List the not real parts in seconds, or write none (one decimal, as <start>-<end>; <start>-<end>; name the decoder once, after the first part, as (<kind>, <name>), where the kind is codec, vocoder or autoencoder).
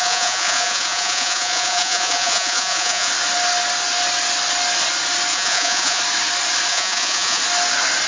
0.0-3.1 (vocoder, Vocos); 5.3-6.0; 6.7-7.4